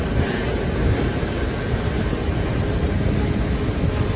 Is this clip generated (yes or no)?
no